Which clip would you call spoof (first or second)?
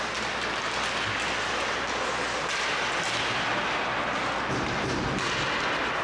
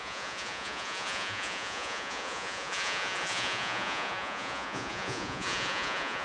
second